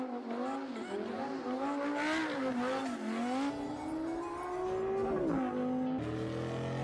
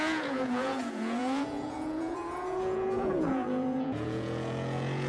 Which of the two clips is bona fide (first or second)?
first